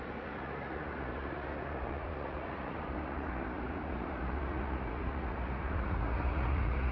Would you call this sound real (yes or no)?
no